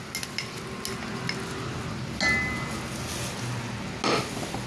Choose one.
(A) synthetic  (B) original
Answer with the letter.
B